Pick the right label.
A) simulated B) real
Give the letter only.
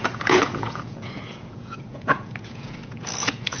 A